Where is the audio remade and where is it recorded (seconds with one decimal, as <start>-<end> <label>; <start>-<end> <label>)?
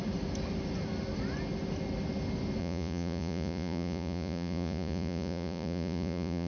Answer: 0.0-2.6 recorded; 2.6-6.5 remade